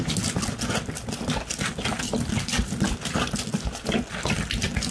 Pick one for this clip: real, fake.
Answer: real